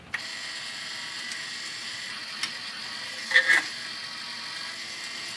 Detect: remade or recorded recorded